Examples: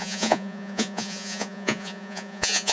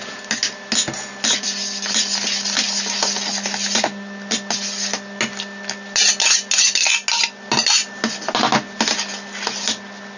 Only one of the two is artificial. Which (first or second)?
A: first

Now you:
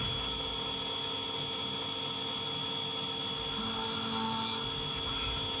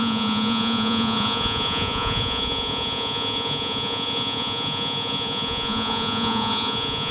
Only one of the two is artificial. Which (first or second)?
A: second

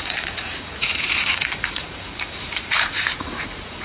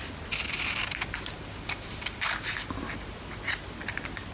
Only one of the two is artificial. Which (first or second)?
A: first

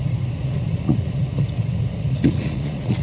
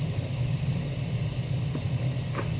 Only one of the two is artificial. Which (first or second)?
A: first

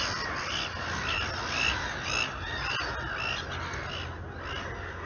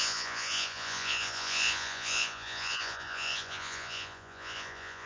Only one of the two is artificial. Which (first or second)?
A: second